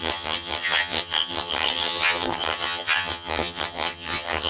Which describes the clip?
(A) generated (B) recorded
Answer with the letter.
A